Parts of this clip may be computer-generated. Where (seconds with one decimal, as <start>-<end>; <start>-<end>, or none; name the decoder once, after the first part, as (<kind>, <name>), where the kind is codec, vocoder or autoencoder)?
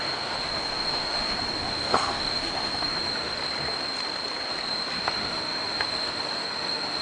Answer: 0.0-3.4 (autoencoder, DAC-VAE); 5.0-7.0